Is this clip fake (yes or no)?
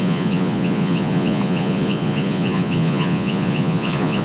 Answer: yes